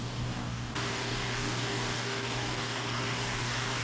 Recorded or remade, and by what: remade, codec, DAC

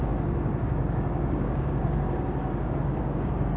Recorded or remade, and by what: remade, codec, DAC